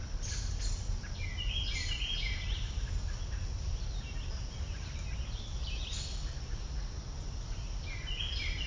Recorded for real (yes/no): yes